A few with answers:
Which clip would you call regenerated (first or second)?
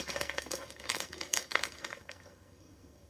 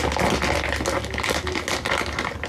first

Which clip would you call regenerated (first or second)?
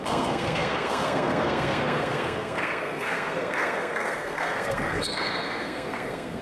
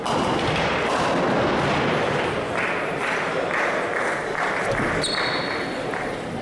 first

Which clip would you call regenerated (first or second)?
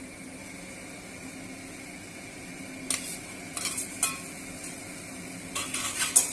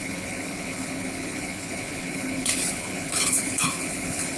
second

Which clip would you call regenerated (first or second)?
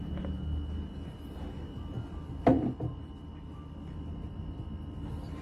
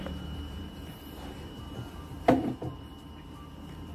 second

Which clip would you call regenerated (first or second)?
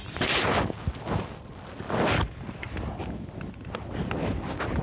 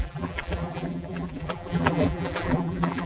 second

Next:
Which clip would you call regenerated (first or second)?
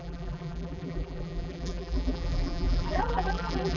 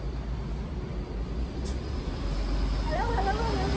first